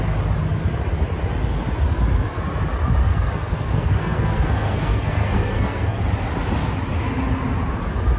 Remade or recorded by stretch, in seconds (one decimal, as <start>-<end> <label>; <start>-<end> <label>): 0.0-3.0 recorded; 3.0-6.0 remade; 6.0-8.2 recorded